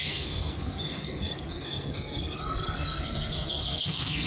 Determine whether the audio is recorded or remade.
remade